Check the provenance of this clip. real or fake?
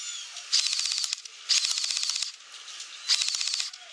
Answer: real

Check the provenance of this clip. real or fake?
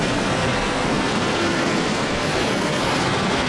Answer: fake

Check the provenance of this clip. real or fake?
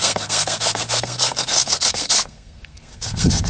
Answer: fake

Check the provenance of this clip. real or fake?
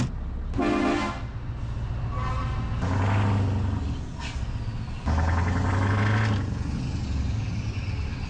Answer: real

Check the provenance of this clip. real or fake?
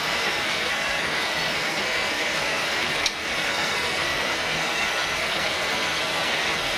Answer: fake